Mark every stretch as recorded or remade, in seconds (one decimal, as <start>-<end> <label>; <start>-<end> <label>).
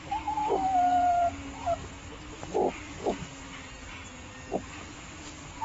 0.0-5.6 recorded